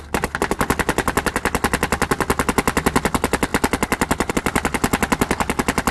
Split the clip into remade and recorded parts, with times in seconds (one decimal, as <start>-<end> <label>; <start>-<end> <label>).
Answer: 0.0-5.9 recorded